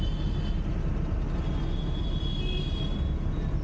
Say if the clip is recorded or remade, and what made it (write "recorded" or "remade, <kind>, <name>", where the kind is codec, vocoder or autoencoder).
recorded